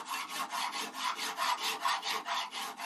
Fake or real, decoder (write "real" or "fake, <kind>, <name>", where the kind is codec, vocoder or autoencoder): fake, vocoder, BigVGAN v2